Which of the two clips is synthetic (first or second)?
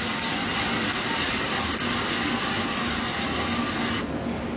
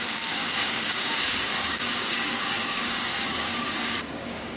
second